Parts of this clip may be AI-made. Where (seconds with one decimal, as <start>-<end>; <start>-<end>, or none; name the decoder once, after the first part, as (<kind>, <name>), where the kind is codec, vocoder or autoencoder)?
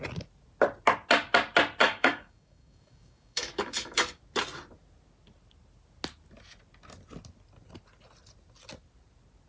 1.8-4.2 (codec, DAC)